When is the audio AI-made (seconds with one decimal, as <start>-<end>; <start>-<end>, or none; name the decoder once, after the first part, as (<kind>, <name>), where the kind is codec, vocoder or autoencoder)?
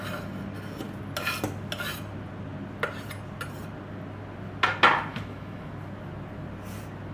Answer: 5.1-5.7 (autoencoder, DAC-VAE)